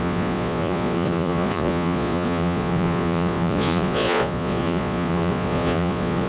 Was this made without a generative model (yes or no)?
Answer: no